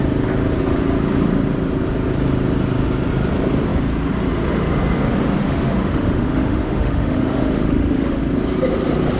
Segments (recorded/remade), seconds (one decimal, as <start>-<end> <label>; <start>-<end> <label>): 0.0-5.4 recorded; 5.4-8.2 remade; 8.2-9.2 recorded